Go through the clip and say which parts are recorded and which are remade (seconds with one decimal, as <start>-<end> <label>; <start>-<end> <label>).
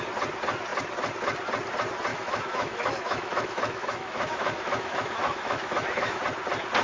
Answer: 0.0-2.1 recorded; 2.1-6.2 remade; 6.2-6.8 recorded